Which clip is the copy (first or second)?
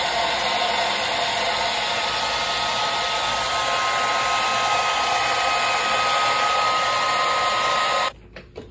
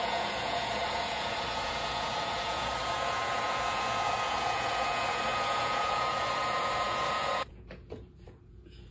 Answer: second